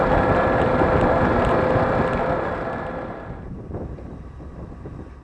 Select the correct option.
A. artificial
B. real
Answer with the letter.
B